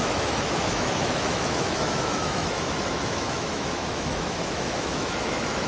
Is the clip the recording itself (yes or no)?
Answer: no